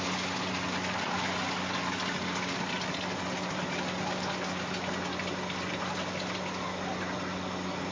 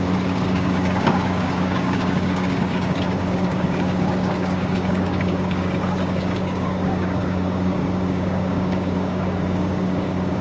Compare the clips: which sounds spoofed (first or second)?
second